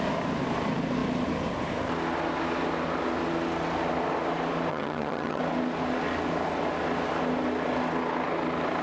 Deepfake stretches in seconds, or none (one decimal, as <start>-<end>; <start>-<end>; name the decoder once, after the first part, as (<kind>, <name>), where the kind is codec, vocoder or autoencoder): 4.7-5.4 (vocoder, HiFi-GAN)